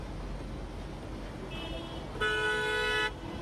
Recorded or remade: recorded